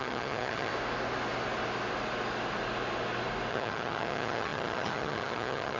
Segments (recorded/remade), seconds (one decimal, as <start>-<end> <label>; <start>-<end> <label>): 0.0-0.7 remade; 0.7-3.5 recorded; 3.5-5.8 remade